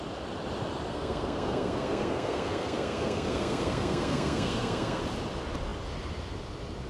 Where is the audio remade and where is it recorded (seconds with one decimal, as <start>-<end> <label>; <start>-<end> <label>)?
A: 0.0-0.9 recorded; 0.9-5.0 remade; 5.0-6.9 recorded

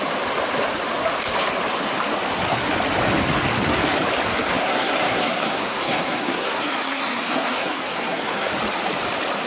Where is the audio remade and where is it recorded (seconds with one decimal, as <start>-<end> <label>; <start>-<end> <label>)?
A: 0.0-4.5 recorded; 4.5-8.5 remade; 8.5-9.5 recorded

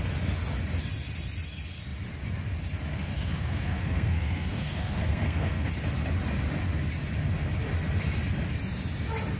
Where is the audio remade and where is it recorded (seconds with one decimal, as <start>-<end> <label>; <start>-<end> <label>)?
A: 0.0-2.9 recorded; 2.9-5.7 remade; 5.7-9.4 recorded

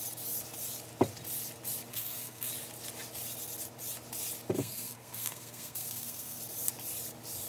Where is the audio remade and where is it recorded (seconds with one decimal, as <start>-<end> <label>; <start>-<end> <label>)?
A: 0.0-1.9 recorded; 1.9-2.5 remade; 2.5-4.6 recorded; 4.6-6.4 remade; 6.4-7.5 recorded

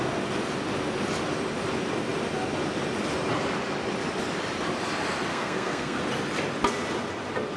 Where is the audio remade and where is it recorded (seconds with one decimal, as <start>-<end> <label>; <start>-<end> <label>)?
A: 0.0-5.3 recorded; 5.3-6.0 remade; 6.0-7.6 recorded

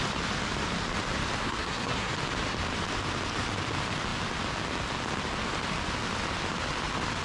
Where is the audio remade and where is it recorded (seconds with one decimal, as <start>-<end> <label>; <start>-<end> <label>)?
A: 0.0-1.4 recorded; 1.4-2.1 remade; 2.1-7.2 recorded

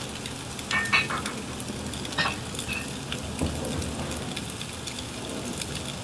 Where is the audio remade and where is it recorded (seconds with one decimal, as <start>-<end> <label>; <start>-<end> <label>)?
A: 0.0-6.0 recorded